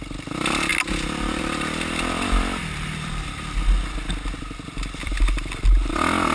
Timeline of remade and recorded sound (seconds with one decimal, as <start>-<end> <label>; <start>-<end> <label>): 0.0-6.3 recorded